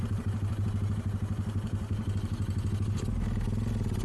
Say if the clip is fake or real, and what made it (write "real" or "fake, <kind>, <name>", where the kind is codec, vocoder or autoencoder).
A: real